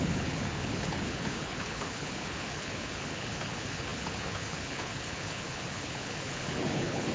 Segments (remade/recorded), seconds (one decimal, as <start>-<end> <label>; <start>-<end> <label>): 0.0-7.1 remade